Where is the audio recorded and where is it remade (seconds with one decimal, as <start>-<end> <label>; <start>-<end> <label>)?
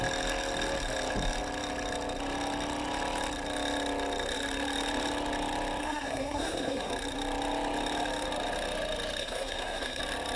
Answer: 0.0-5.8 recorded; 5.8-6.9 remade; 6.9-9.2 recorded; 9.2-10.0 remade; 10.0-10.4 recorded